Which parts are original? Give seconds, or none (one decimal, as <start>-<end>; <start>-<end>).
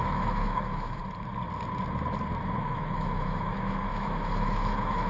1.0-2.6